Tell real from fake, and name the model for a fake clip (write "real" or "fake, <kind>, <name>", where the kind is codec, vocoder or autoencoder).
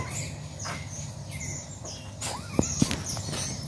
real